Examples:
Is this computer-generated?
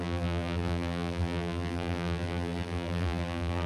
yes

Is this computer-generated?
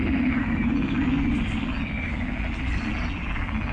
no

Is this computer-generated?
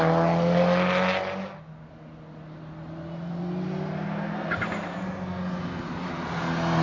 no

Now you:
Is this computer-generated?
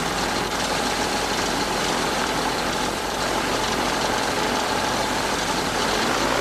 yes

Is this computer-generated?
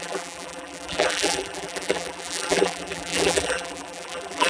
yes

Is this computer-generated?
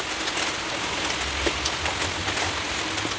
no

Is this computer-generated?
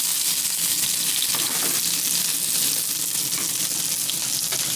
no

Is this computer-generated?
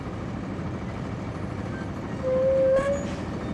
no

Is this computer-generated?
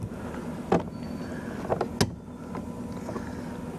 no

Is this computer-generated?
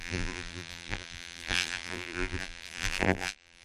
yes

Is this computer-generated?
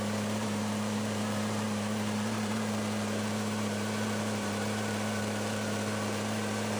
yes